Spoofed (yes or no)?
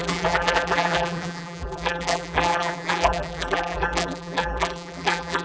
yes